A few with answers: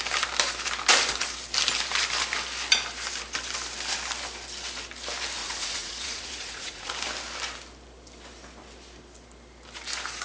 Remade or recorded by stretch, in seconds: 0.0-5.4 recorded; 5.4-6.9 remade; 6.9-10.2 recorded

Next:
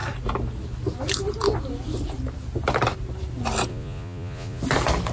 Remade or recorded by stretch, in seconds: 0.0-3.7 recorded; 3.7-4.6 remade; 4.6-5.1 recorded